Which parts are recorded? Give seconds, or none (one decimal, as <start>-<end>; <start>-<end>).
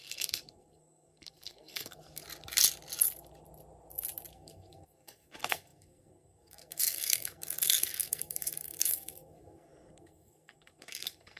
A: 2.2-4.3